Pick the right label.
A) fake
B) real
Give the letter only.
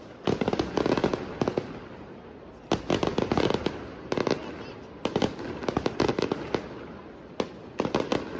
B